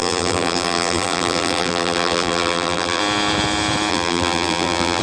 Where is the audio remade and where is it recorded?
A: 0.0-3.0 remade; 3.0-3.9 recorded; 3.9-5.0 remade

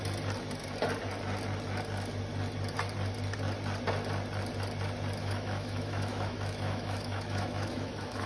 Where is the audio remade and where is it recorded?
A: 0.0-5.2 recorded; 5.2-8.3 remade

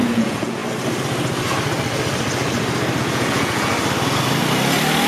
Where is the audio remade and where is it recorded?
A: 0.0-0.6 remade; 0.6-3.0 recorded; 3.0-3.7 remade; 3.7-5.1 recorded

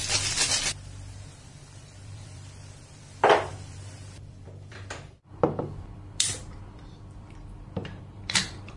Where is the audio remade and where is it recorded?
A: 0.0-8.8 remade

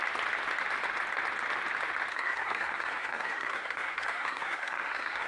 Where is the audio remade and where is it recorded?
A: 0.0-2.1 recorded; 2.1-5.3 remade

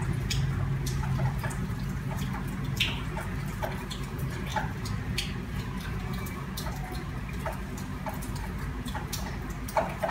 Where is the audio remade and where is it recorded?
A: 0.0-10.1 recorded